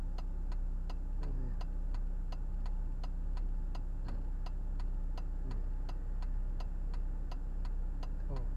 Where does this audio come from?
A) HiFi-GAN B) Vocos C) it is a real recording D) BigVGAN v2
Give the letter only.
C